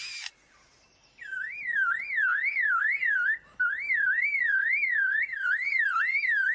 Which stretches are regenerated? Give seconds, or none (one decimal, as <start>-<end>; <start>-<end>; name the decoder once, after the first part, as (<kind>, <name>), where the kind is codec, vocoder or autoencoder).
none

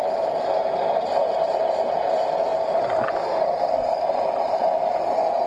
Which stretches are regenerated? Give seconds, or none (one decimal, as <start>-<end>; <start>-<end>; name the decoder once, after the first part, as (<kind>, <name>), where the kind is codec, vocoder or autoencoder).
none

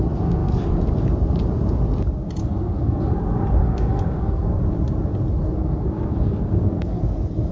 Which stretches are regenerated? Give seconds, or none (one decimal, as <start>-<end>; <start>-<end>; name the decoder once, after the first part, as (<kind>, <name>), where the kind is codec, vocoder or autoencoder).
2.4-3.1 (codec, SNAC); 3.6-4.6; 5.4-7.0

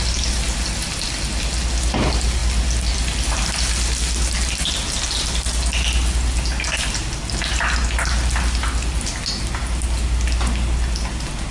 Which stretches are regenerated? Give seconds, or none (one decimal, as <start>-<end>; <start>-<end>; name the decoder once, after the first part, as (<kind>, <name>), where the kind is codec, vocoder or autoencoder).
none

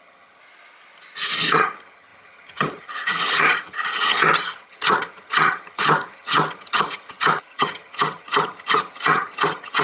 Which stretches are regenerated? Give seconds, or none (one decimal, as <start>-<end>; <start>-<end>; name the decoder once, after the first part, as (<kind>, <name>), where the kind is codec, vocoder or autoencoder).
0.0-0.4 (vocoder, HiFi-GAN); 1.5-9.8

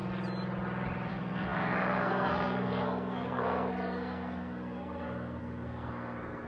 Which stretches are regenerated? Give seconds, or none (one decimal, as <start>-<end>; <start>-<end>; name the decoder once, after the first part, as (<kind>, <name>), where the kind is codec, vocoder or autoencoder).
1.1-6.5 (codec, SNAC)